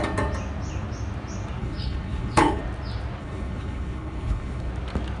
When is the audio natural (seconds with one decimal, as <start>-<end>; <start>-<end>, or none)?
0.0-1.6; 2.6-3.2; 4.7-5.2